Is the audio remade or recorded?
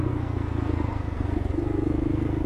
remade